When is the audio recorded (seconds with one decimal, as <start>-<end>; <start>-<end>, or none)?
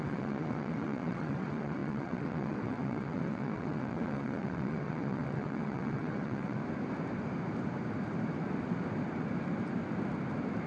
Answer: 6.6-10.7